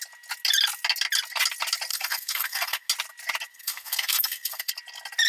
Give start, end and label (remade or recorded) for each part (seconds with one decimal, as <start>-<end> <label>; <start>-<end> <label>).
0.0-1.9 recorded; 1.9-2.9 remade; 2.9-3.5 recorded; 3.5-4.7 remade; 4.7-5.3 recorded